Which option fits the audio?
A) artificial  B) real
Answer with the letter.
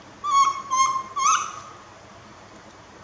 A